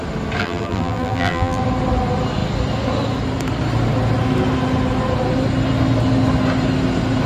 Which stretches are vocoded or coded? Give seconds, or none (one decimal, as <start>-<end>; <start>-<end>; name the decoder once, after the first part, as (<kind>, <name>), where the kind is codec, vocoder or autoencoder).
0.4-1.6 (vocoder, BigVGAN v2)